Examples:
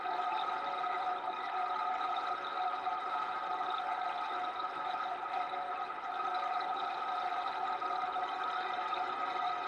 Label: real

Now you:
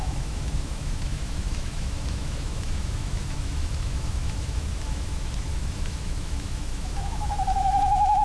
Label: fake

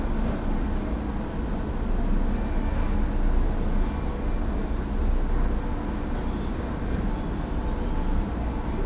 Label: real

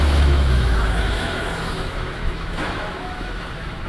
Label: fake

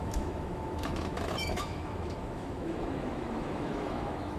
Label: fake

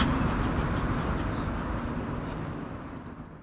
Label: real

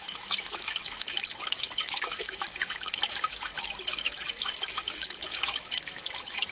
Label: fake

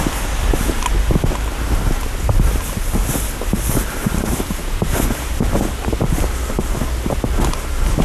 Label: real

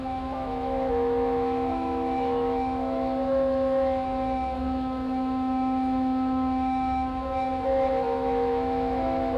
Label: fake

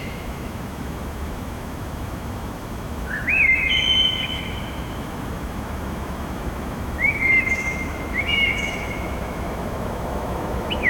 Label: fake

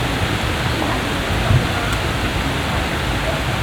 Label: real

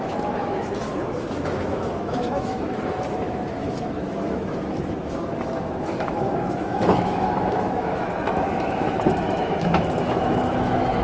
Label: fake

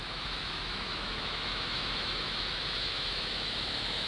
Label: fake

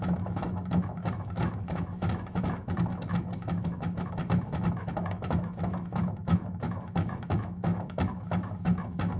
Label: fake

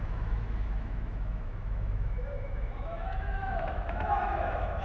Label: fake